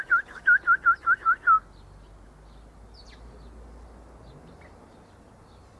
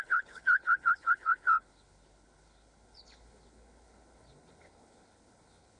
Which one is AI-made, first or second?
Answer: second